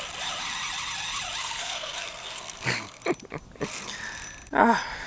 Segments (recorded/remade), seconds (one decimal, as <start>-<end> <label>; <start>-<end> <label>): 0.0-1.4 recorded; 1.4-3.0 remade; 3.0-5.1 recorded